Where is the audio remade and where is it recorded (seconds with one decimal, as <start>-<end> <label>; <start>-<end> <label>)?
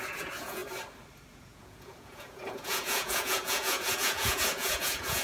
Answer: 0.0-0.6 remade; 0.6-1.3 recorded; 1.3-5.2 remade